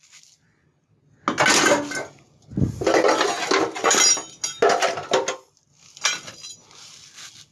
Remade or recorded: recorded